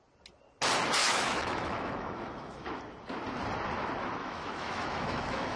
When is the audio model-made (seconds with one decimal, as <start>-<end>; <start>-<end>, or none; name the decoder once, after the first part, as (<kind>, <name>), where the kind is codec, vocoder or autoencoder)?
1.0-2.8 (autoencoder, DAC-VAE); 4.2-5.6